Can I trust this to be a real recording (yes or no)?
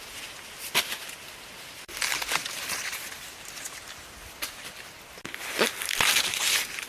yes